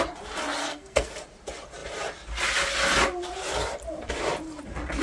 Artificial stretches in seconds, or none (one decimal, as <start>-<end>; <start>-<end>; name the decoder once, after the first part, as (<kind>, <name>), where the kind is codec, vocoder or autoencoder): 0.6-1.1 (codec, SNAC)